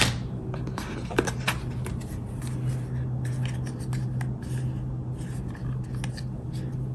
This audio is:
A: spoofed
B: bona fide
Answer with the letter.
B